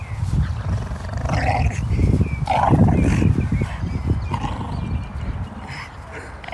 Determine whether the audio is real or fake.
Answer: real